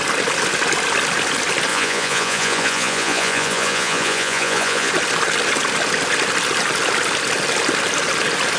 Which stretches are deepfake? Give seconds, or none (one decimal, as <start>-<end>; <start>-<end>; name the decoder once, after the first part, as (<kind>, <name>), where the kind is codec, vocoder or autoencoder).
1.7-4.9 (vocoder, Vocos)